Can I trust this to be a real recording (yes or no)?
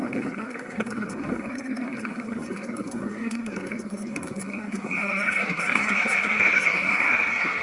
no